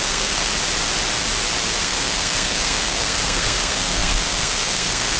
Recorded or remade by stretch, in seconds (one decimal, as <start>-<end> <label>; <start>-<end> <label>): 0.0-0.5 remade; 0.5-1.8 recorded; 1.8-5.2 remade